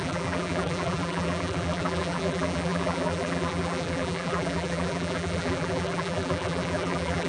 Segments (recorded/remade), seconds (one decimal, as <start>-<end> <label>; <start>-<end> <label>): 0.0-7.3 remade

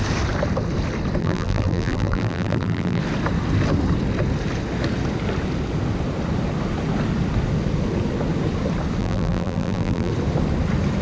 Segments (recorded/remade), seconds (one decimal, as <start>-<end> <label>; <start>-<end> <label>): 0.0-1.2 recorded; 1.2-3.0 remade; 3.0-9.0 recorded; 9.0-10.1 remade; 10.1-11.0 recorded

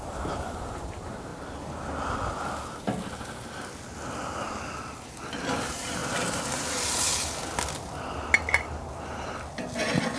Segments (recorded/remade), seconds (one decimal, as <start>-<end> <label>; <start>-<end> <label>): 0.0-1.3 remade; 1.3-5.6 recorded; 5.6-6.0 remade; 6.0-10.2 recorded